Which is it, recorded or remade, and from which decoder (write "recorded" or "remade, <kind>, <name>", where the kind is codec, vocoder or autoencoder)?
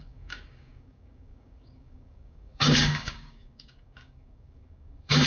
remade, codec, DAC